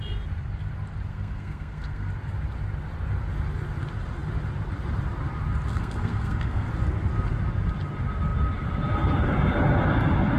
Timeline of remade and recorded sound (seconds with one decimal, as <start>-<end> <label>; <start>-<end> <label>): 0.0-1.1 recorded; 1.1-2.1 remade; 2.1-5.7 recorded; 5.7-6.7 remade; 6.7-10.4 recorded